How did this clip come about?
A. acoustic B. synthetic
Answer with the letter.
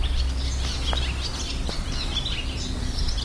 A